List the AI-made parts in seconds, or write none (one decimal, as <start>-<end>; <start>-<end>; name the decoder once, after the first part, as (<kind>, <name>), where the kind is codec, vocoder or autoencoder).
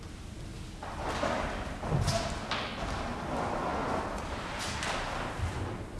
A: none